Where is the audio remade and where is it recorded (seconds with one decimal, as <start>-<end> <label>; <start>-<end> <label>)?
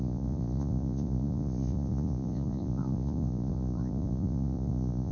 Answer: 0.0-5.1 remade